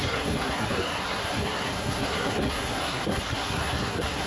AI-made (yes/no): yes